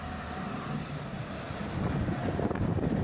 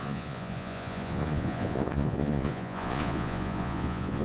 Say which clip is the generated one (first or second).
second